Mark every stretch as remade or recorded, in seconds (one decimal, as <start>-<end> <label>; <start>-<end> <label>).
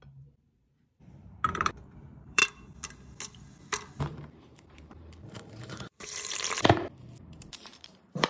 0.0-2.4 remade; 2.4-4.0 recorded; 4.0-8.3 remade